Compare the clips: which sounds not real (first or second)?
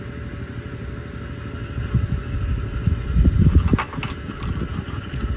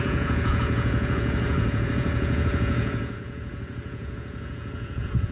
second